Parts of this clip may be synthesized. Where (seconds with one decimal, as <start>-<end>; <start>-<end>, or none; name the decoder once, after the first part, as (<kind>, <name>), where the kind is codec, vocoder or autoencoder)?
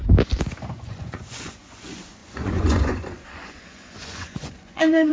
0.7-5.1 (vocoder, Vocos)